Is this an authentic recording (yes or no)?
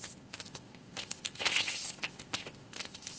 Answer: no